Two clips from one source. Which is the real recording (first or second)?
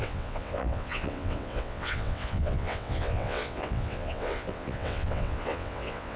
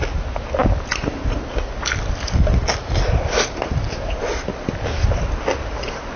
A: second